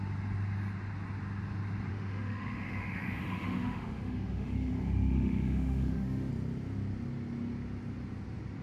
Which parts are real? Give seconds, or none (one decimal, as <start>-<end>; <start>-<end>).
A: 0.0-1.9; 6.3-8.6